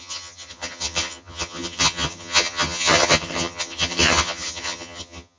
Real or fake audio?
fake